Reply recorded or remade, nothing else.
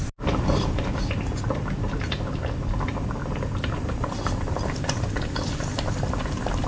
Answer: recorded